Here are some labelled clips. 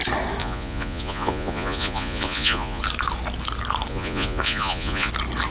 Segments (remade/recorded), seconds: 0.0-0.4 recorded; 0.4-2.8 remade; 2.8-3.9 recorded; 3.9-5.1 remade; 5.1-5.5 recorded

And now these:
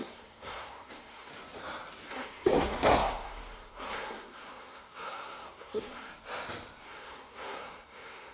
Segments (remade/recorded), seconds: 0.0-1.3 remade; 1.3-2.1 recorded; 2.1-6.1 remade; 6.1-6.8 recorded; 6.8-8.3 remade

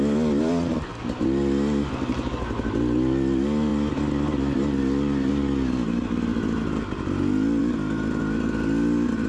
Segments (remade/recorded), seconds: 0.0-9.3 recorded